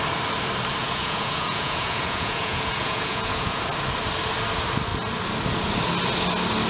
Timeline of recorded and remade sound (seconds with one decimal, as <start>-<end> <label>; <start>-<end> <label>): 0.0-0.8 recorded; 0.8-3.6 remade; 3.6-6.7 recorded